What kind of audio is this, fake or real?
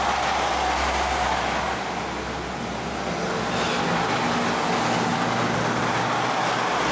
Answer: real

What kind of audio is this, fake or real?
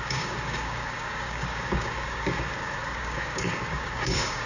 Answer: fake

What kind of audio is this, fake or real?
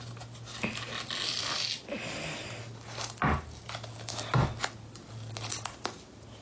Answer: real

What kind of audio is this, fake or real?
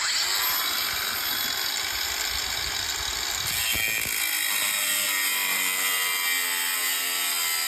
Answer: real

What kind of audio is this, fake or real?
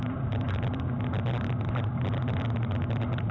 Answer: real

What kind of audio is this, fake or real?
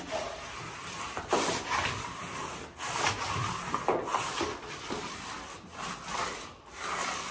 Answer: real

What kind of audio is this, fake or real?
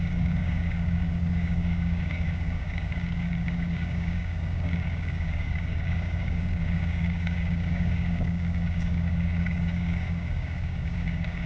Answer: fake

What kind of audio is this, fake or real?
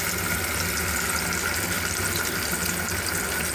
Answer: real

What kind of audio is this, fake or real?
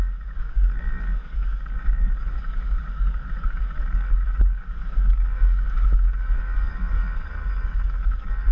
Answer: fake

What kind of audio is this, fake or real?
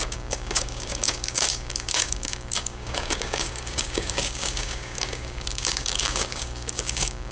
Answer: fake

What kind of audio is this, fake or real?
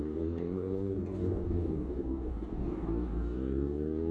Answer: fake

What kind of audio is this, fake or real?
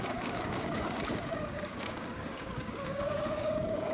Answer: fake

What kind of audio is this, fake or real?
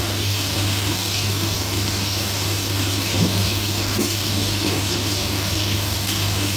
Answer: fake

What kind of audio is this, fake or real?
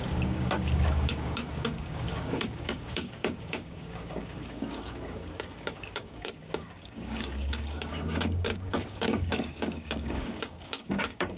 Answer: fake